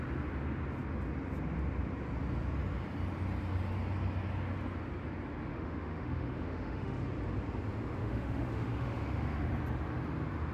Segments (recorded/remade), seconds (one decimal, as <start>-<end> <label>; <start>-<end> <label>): 0.0-5.5 recorded; 5.5-7.0 remade; 7.0-8.0 recorded; 8.0-9.5 remade; 9.5-10.5 recorded